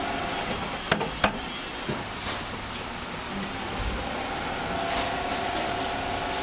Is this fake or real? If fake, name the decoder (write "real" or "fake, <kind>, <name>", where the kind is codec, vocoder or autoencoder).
real